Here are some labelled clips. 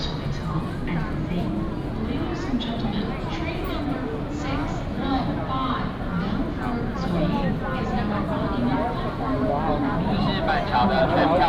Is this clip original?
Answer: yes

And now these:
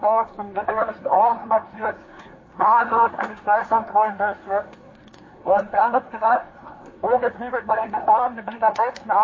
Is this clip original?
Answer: no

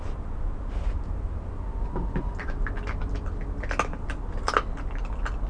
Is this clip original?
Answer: yes